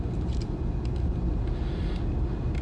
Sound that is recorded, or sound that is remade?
recorded